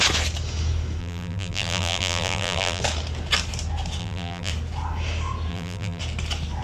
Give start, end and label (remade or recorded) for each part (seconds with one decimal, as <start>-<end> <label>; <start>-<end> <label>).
0.0-1.0 recorded; 1.0-2.8 remade; 2.8-4.0 recorded; 4.0-4.5 remade; 4.5-5.5 recorded; 5.5-6.0 remade; 6.0-6.6 recorded